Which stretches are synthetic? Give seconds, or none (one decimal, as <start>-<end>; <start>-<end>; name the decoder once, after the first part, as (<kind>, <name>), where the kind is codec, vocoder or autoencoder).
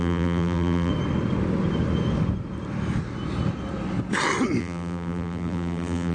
0.0-0.9 (vocoder, BigVGAN v2); 4.6-6.1